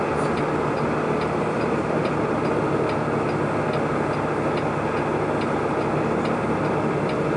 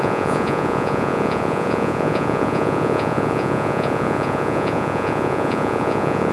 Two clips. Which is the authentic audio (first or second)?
first